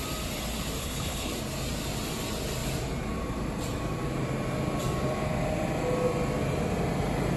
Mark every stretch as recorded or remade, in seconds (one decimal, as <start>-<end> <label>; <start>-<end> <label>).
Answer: 0.0-0.8 recorded; 0.8-1.3 remade; 1.3-7.4 recorded